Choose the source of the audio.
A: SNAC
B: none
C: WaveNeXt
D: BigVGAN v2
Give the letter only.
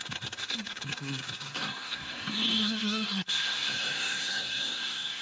A